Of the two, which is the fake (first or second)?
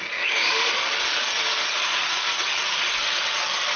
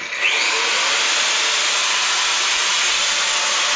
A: first